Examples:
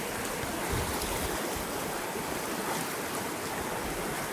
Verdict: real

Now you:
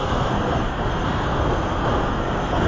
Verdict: fake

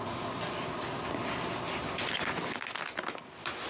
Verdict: real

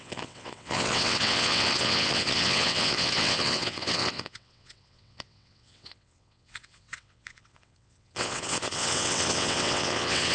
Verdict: fake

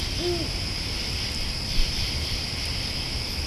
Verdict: real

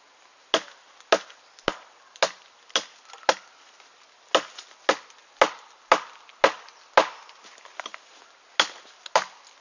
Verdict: real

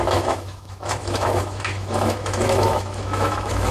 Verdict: fake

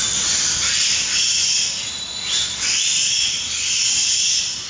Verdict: real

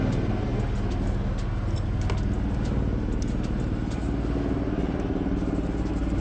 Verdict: real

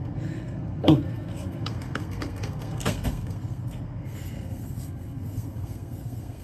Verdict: fake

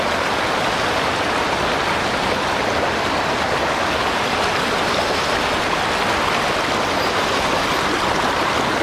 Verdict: real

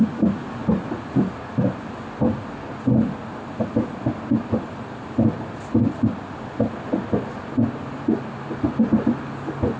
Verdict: real